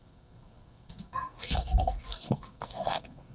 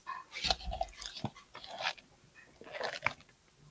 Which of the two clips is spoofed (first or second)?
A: first